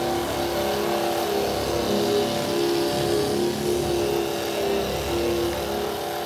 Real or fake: real